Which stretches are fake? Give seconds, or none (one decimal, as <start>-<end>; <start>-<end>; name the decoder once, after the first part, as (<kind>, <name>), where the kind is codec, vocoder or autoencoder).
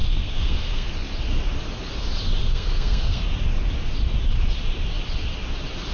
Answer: 0.0-0.9 (codec, SNAC); 2.4-3.2